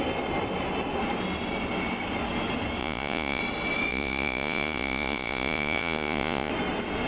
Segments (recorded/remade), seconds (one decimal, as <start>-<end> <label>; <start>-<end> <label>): 0.0-2.8 recorded; 2.8-3.4 remade; 3.4-3.9 recorded; 3.9-6.5 remade; 6.5-7.1 recorded